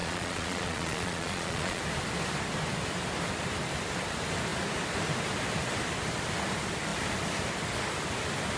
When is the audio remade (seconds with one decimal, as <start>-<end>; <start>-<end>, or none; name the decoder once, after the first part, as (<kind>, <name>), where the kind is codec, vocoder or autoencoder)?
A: 0.0-1.8 (vocoder, Vocos)